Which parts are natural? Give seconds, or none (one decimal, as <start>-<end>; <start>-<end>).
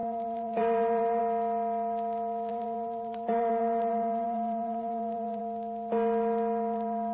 1.2-2.5; 5.4-7.1